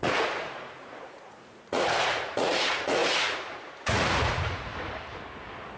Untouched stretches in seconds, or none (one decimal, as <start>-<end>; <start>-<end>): 4.7-5.8